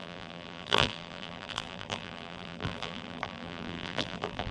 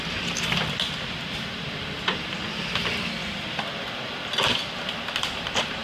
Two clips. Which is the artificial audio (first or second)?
first